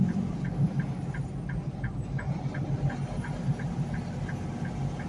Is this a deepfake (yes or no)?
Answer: no